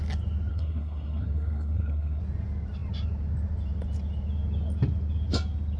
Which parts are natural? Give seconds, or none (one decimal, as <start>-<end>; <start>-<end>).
0.0-0.5; 2.2-5.8